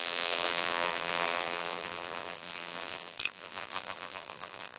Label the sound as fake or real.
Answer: fake